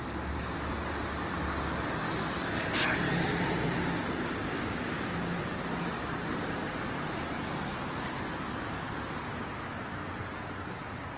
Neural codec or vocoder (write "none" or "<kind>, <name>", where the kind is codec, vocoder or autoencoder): none